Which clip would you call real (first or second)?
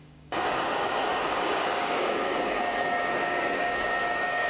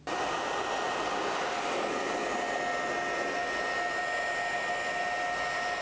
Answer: second